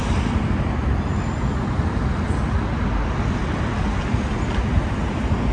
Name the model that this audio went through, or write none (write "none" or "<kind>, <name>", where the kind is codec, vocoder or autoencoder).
none